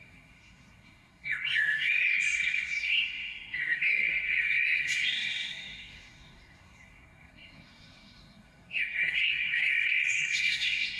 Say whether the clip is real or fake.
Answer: fake